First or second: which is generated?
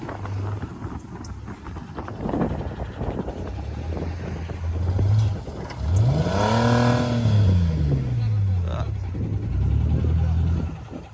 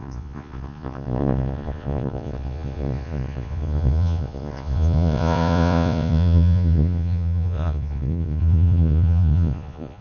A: second